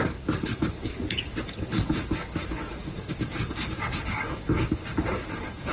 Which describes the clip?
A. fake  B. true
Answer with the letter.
A